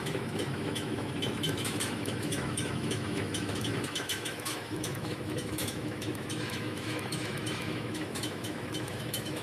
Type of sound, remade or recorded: remade